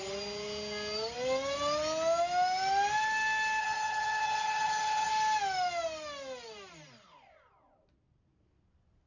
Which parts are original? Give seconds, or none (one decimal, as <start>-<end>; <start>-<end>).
0.0-3.6; 5.1-9.1